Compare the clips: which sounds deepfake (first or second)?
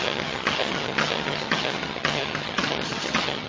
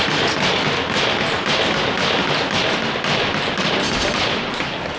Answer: first